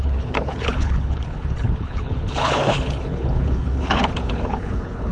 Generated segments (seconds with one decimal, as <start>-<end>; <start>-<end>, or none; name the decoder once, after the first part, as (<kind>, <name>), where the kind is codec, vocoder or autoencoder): 0.0-5.1 (codec, HILCodec)